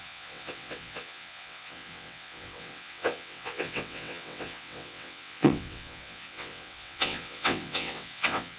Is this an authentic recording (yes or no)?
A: no